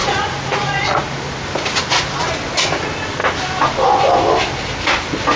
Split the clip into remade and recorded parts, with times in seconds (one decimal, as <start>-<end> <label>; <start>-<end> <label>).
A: 0.0-1.0 remade; 1.0-5.4 recorded